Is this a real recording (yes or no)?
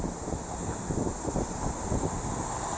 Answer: yes